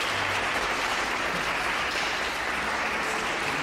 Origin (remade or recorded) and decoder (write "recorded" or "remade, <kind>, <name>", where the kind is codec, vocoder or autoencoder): recorded